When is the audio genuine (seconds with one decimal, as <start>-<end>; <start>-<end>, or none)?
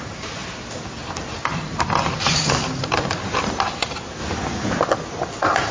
0.0-5.7